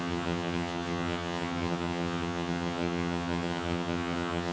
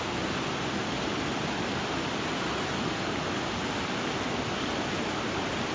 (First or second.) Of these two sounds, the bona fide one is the second